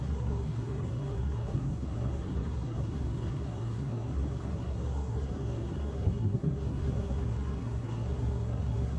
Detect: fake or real fake